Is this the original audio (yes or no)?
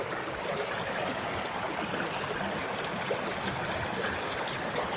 yes